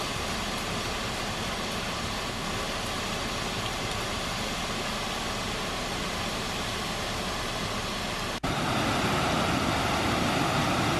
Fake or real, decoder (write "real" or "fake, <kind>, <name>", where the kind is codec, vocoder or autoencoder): real